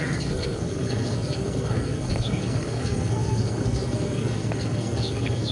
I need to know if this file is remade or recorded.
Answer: remade